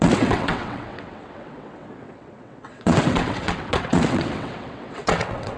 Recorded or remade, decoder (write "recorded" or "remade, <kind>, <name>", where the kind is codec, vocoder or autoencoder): remade, vocoder, WaveNeXt